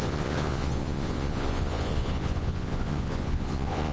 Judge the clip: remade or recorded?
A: remade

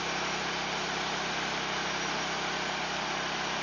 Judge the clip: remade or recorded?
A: recorded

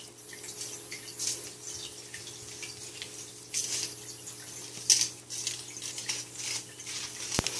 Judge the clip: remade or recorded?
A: recorded